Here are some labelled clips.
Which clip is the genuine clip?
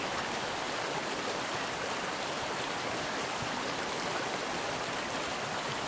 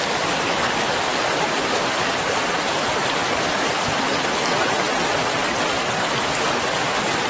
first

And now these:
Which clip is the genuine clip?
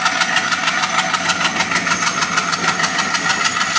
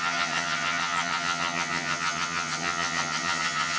first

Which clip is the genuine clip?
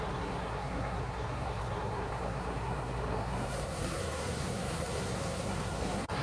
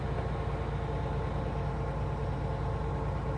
second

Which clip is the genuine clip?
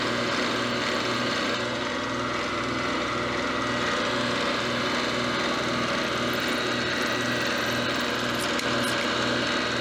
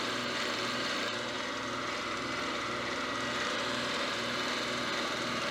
first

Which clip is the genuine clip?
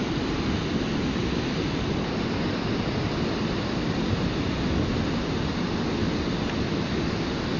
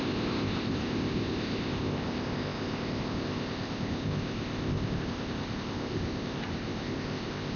first